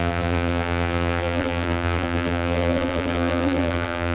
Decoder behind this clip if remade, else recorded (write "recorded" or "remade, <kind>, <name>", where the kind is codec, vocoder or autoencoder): remade, vocoder, BigVGAN v2